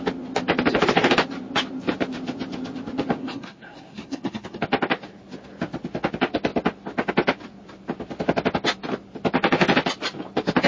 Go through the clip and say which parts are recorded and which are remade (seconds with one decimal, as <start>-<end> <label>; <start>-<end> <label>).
0.0-3.2 recorded; 3.2-4.6 remade; 4.6-10.7 recorded